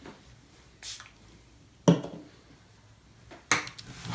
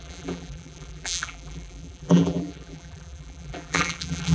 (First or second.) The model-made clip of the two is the second